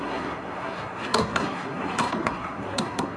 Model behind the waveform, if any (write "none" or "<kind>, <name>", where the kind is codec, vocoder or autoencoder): codec, SNAC